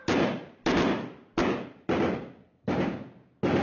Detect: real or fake real